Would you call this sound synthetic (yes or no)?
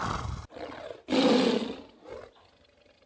no